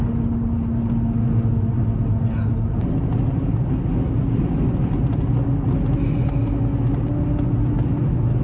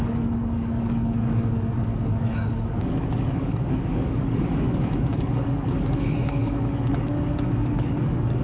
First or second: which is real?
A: first